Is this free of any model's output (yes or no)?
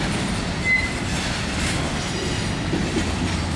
yes